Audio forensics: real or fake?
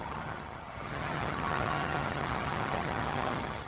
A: fake